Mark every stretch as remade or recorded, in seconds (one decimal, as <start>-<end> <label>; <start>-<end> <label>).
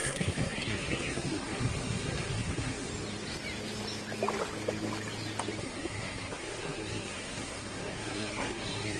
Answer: 0.0-2.9 remade; 2.9-5.6 recorded; 5.6-9.0 remade